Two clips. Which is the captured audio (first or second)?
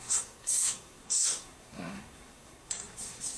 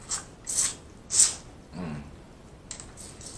second